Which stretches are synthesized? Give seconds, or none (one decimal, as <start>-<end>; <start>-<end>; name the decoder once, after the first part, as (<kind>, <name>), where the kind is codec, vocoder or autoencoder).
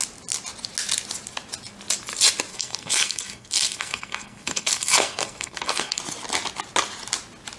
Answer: 2.5-6.0 (codec, SNAC)